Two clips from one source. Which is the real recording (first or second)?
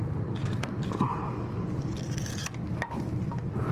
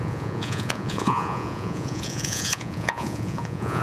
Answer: first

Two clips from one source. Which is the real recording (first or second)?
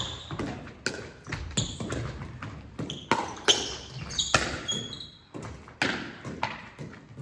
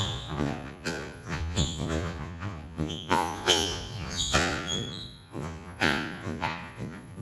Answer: first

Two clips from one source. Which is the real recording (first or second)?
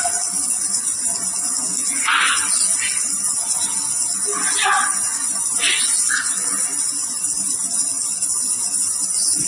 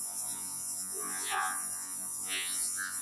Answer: first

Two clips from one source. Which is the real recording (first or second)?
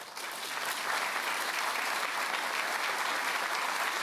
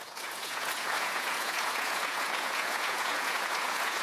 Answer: first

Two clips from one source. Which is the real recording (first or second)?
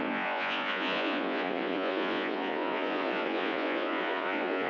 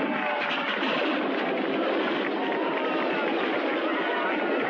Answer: second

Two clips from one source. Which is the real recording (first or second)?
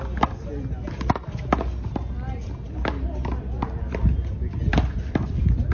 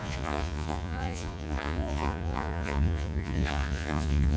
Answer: first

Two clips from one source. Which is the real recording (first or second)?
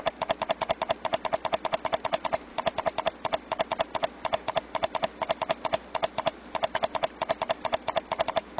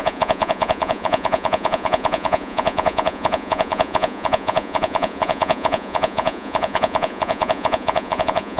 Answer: first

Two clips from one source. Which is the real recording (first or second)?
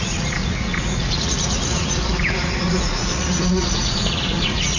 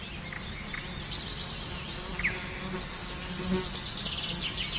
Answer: second